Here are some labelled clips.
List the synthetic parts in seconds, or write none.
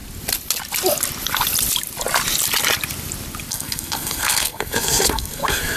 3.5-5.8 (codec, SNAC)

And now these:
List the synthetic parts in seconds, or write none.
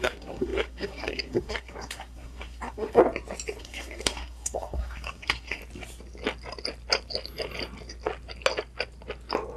0.0-3.0 (codec, SNAC); 3.6-5.6